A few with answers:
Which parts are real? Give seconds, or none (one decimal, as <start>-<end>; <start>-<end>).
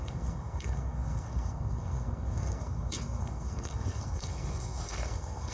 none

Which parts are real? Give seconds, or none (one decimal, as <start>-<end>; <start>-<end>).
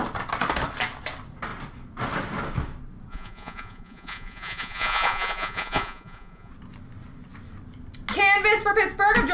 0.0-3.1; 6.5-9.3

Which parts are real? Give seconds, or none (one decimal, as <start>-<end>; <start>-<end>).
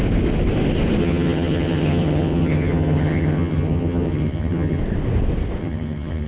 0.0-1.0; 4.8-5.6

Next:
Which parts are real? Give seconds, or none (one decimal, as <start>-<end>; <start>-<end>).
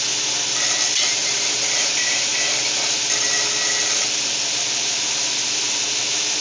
0.0-1.2; 2.6-6.4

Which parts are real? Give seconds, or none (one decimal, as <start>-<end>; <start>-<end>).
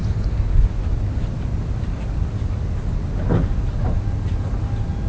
0.0-5.1